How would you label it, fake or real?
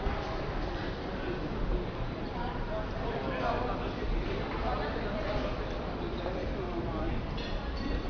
real